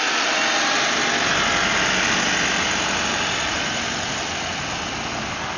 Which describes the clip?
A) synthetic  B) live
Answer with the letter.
B